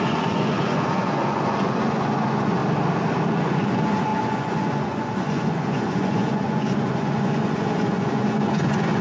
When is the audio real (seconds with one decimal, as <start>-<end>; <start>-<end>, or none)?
2.6-3.3